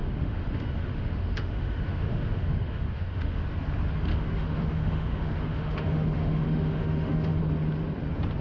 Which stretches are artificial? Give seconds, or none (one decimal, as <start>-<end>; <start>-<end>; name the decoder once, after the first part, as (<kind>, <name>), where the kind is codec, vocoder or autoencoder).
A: 0.0-3.4 (autoencoder, DAC-VAE); 4.1-7.4